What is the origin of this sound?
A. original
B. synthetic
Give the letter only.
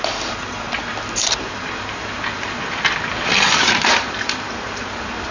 B